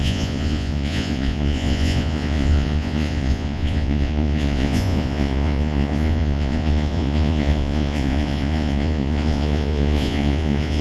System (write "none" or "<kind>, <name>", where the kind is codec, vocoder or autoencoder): vocoder, Vocos